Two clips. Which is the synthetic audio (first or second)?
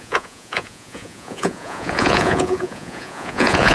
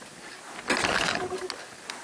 first